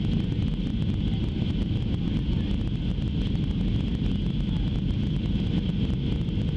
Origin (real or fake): real